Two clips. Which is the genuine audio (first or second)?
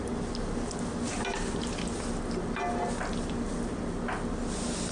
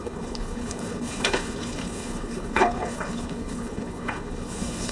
first